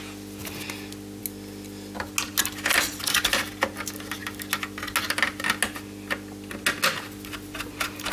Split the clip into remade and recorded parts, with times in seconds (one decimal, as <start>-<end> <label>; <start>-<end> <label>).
0.0-8.1 recorded